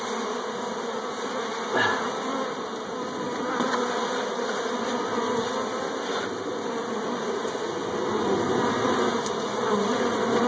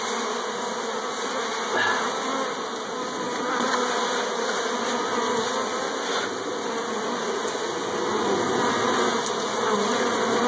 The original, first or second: second